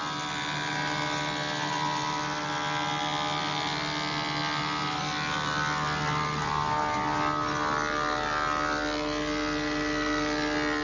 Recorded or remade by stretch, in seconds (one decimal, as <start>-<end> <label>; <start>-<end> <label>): 0.0-10.8 recorded